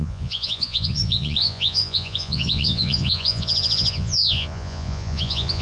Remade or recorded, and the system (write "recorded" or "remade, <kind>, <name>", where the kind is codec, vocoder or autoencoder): remade, vocoder, Vocos